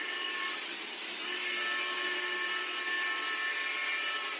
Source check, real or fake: real